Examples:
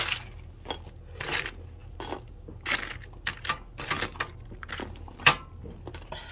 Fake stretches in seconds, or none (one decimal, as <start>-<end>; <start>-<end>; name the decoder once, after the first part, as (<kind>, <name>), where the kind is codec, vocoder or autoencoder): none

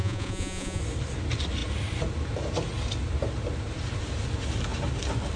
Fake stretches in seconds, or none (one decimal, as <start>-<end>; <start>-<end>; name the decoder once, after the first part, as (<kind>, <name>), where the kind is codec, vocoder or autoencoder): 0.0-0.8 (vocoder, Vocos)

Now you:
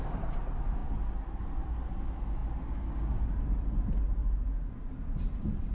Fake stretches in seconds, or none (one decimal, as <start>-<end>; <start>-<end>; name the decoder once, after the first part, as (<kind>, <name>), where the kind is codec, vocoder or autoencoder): none

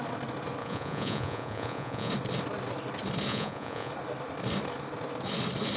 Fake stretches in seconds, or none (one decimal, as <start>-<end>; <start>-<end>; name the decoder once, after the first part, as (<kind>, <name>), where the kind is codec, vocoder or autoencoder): 0.6-2.1 (vocoder, Vocos); 3.3-3.9

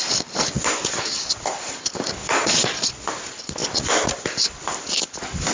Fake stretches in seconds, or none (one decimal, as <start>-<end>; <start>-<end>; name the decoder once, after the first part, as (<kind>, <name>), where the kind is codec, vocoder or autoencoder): 2.2-3.1 (vocoder, Vocos)